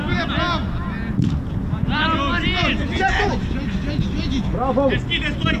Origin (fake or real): real